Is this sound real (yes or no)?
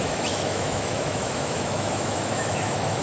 no